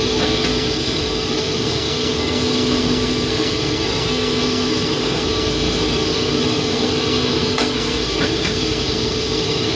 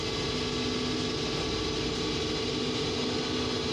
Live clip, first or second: second